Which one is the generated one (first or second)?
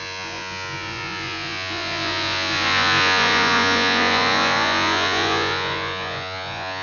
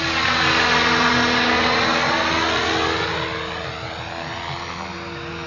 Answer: first